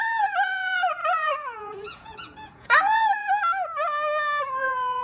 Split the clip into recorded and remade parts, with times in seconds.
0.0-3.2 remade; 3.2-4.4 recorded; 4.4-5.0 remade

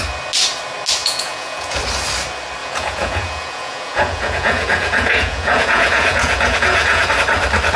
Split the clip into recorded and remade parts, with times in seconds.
0.0-1.0 recorded; 1.0-1.8 remade; 1.8-2.6 recorded; 2.6-7.1 remade; 7.1-7.8 recorded

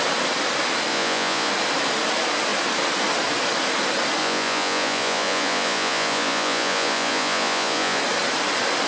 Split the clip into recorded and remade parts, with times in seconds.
0.0-0.9 recorded; 0.9-1.5 remade; 1.5-4.2 recorded; 4.2-8.0 remade; 8.0-8.9 recorded

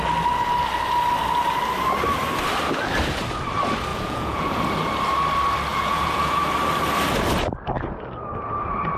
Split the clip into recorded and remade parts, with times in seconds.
0.0-3.9 recorded; 3.9-4.6 remade; 4.6-5.7 recorded; 5.7-6.4 remade; 6.4-9.0 recorded

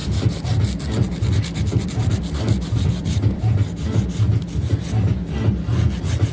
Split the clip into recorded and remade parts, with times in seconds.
0.0-3.4 remade; 3.4-6.3 recorded

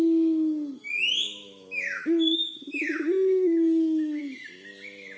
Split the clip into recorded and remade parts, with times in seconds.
0.0-1.1 recorded; 1.1-4.2 remade; 4.2-5.2 recorded

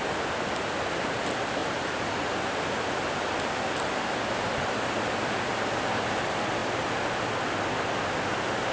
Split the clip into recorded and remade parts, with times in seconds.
0.0-8.7 recorded

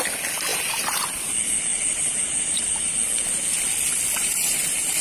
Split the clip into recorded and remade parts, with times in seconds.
0.0-0.5 recorded; 0.5-1.2 remade; 1.2-1.7 recorded; 1.7-2.9 remade; 2.9-4.2 recorded; 4.2-5.0 remade